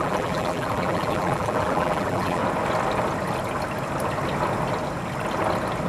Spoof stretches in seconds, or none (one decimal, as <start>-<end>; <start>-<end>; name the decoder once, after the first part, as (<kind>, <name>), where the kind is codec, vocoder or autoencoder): 0.0-2.4 (vocoder, BigVGAN v2)